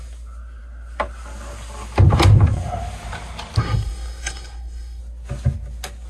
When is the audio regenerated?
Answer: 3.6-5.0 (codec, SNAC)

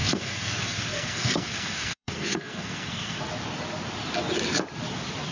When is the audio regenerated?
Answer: 0.0-3.2 (codec, SNAC)

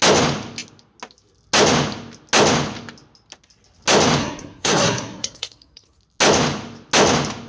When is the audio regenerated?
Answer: 4.2-6.0 (codec, SNAC)